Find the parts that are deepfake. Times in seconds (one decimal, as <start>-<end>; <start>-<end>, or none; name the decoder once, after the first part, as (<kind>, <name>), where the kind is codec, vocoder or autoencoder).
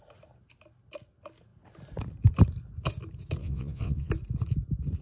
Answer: 3.4-4.1 (vocoder, WaveNeXt)